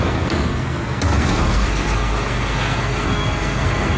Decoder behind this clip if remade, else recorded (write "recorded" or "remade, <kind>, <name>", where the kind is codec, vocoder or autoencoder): remade, codec, SNAC